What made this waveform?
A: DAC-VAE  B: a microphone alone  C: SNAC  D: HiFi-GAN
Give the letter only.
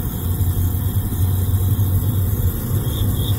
B